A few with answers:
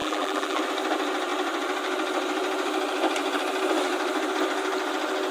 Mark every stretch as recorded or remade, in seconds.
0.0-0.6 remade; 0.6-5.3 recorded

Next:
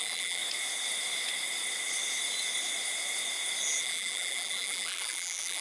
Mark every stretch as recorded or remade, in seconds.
0.0-0.4 remade; 0.4-3.8 recorded; 3.8-5.6 remade